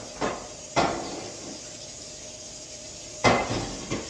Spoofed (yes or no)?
no